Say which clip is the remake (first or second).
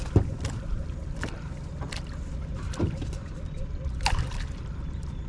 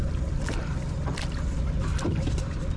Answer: first